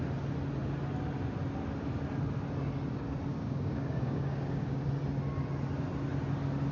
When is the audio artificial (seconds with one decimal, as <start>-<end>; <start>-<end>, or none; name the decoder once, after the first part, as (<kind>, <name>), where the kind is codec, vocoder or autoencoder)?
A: 3.3-4.8 (codec, DAC)